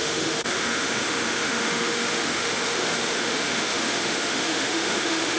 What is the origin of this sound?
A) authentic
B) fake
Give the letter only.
B